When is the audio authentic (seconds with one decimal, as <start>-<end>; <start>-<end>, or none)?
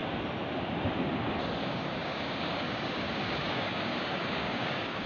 0.0-1.6